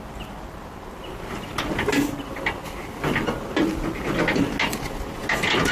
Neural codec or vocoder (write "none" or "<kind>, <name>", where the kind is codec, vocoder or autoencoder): none